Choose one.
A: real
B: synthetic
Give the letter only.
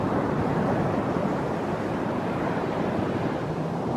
B